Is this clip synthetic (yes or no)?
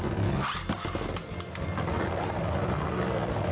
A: no